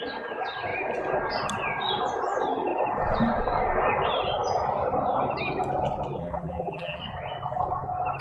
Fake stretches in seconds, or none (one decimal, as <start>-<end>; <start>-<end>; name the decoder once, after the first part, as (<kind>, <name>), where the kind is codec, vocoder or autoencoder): 6.2-7.0 (vocoder, BigVGAN v2)

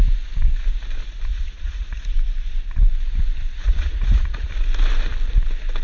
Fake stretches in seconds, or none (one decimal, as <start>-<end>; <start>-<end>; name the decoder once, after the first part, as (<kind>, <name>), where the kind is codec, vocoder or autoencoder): 1.3-2.0 (vocoder, Vocos); 3.6-4.5

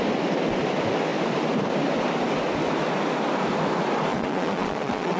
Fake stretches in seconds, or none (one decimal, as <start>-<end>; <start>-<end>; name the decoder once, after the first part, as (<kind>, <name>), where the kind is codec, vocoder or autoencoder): 4.1-5.2 (vocoder, Vocos)